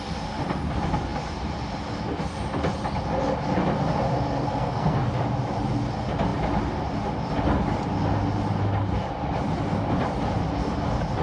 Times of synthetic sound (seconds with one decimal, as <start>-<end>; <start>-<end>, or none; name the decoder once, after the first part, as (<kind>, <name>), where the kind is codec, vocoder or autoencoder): 4.3-5.0 (codec, SNAC)